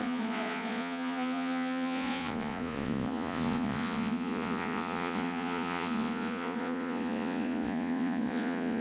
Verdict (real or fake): fake